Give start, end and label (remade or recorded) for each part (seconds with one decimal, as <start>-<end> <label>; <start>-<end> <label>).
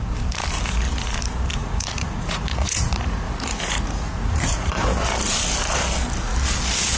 0.0-1.6 recorded; 1.6-4.9 remade; 4.9-7.0 recorded